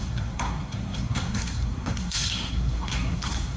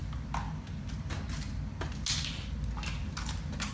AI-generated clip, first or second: first